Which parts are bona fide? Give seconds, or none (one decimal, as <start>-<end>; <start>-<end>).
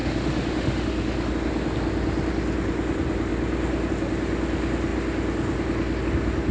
1.3-6.5